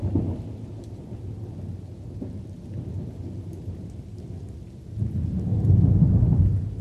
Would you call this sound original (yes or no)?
yes